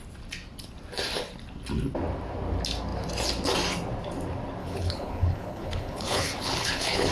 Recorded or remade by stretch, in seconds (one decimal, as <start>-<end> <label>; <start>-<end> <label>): 0.0-4.6 recorded; 4.6-7.1 remade